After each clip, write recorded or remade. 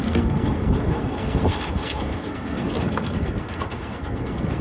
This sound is remade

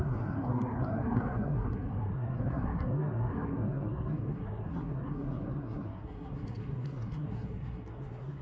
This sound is remade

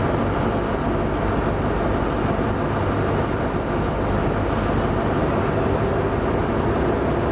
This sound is recorded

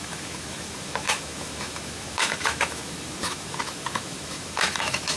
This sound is remade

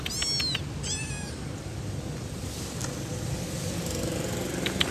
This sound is recorded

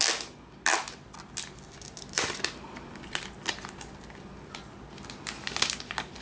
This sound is recorded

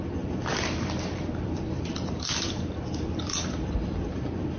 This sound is remade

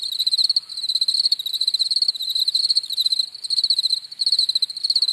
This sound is recorded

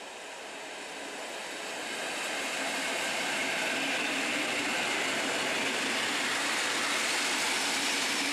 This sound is recorded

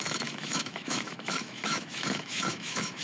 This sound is remade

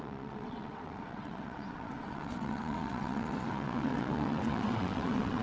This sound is remade